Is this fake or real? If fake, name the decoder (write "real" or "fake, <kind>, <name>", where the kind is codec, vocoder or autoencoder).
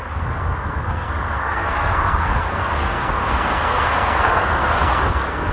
fake, codec, SNAC